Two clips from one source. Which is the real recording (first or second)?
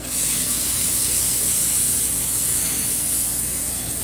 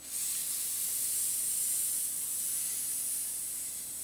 second